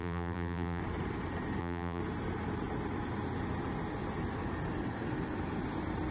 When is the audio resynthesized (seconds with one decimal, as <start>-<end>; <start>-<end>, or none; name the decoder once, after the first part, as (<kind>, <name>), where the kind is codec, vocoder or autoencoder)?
0.0-0.8 (vocoder, BigVGAN v2); 1.6-2.0